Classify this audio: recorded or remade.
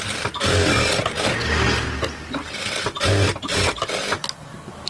recorded